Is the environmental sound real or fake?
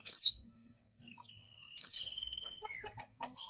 fake